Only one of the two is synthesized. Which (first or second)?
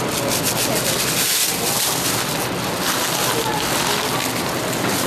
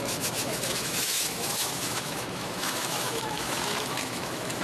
second